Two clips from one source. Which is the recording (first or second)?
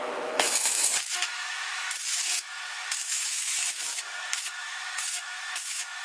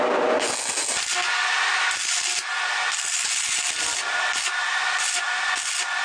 second